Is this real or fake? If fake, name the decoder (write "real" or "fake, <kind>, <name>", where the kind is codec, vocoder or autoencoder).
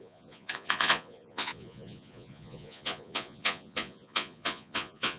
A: fake, vocoder, Vocos